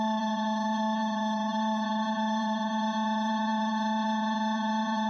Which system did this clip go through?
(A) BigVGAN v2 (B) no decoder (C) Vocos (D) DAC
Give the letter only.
C